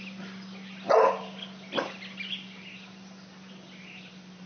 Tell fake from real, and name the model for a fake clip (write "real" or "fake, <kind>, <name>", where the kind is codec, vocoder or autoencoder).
real